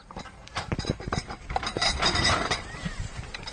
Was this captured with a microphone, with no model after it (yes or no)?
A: no